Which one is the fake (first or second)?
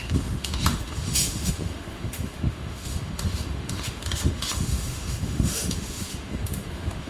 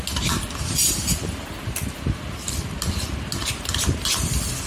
first